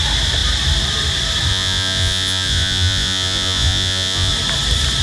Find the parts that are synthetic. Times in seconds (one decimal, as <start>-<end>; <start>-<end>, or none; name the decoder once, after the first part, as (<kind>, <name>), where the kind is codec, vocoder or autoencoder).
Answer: 1.5-4.3 (vocoder, Vocos)